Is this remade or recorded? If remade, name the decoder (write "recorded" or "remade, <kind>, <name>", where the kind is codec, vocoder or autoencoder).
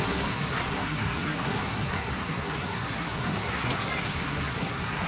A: remade, codec, SNAC